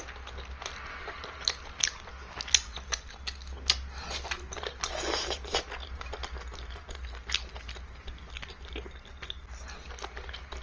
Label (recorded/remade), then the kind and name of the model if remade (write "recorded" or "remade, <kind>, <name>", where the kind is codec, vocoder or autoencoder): recorded